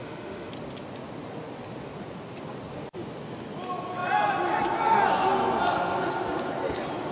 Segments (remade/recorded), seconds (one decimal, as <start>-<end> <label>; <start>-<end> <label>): 0.0-0.5 remade; 0.5-7.1 recorded